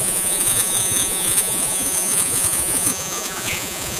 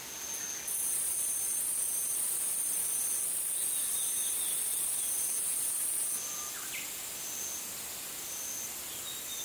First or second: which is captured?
second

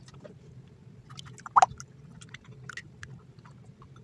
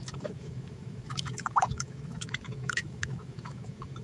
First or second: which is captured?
first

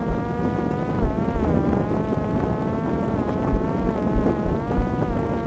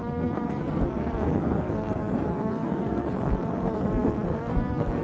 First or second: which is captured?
first